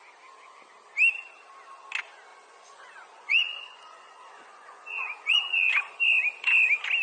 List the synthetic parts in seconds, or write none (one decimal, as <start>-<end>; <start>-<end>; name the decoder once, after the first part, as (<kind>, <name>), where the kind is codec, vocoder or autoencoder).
2.3-6.0 (vocoder, Vocos)